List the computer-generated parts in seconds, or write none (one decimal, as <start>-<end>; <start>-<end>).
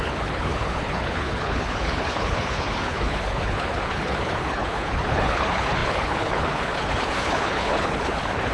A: 0.0-8.5